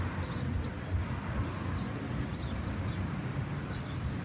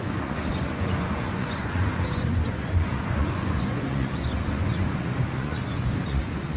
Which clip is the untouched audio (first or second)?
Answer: first